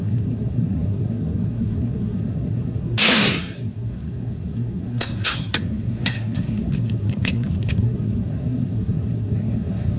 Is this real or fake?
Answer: fake